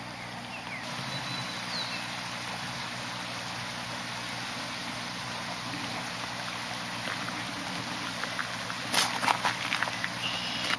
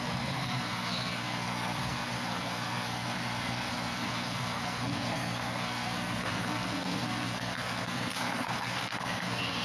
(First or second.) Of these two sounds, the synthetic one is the second